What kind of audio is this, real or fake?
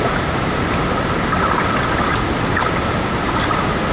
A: real